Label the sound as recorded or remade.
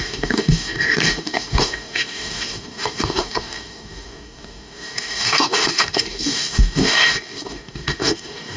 remade